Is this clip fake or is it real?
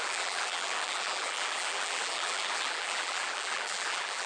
fake